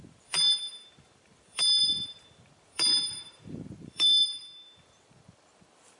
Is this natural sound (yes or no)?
no